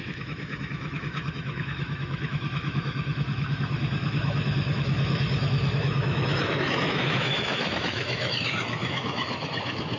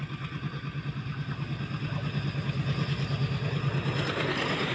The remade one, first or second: first